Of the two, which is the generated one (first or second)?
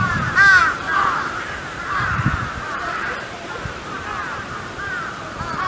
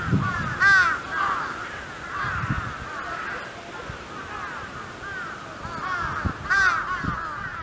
first